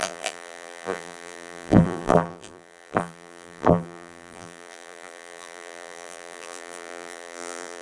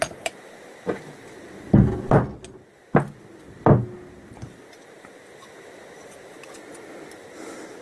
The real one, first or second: second